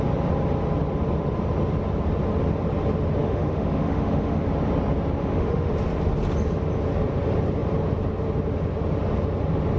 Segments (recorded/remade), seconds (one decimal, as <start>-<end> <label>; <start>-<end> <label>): 0.0-3.2 recorded; 3.2-4.4 remade; 4.4-5.2 recorded; 5.2-5.7 remade; 5.7-9.8 recorded